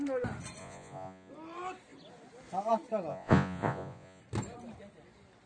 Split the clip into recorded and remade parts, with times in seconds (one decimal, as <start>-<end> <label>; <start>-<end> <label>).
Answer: 0.0-0.6 recorded; 0.6-1.3 remade; 1.3-3.1 recorded; 3.1-4.2 remade; 4.2-5.5 recorded